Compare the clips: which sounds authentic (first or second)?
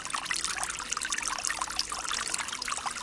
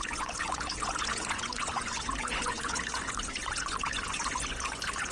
first